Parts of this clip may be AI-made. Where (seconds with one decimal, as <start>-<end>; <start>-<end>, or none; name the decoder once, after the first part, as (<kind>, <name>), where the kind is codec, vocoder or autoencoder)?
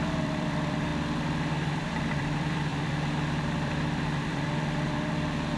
0.0-0.9 (vocoder, BigVGAN v2); 1.5-5.6